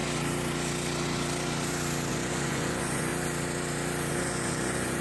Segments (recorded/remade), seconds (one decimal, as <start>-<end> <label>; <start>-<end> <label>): 0.0-2.1 recorded; 2.1-3.1 remade; 3.1-4.1 recorded; 4.1-5.0 remade